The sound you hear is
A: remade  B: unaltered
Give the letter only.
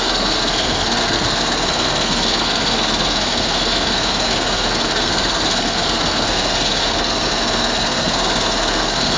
A